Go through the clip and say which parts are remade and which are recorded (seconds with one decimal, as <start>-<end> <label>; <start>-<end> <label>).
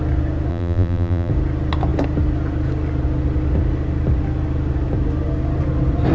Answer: 0.0-0.5 recorded; 0.5-1.3 remade; 1.3-6.1 recorded